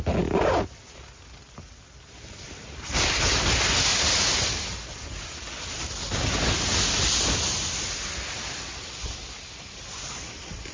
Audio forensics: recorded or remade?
recorded